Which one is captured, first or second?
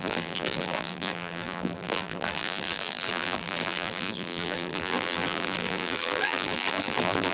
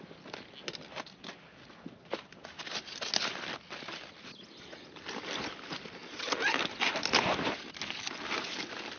second